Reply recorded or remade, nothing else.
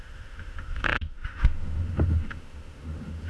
remade